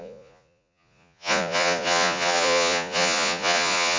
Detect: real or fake fake